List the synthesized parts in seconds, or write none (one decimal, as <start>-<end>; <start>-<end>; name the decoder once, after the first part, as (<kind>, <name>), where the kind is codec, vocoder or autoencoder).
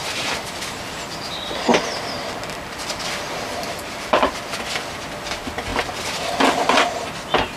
1.7-4.4 (vocoder, BigVGAN v2)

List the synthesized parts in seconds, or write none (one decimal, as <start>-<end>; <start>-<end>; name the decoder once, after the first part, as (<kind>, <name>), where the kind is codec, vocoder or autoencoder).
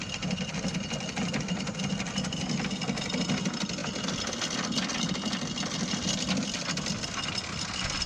none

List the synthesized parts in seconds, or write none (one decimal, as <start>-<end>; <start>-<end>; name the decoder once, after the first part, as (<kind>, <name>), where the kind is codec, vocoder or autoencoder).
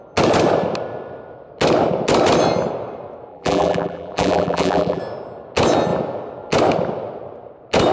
3.3-5.0 (vocoder, BigVGAN v2)